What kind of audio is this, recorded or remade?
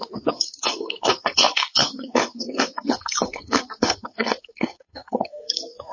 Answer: remade